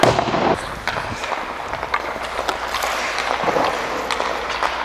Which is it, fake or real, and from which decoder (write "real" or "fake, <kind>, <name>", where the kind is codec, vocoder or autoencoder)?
real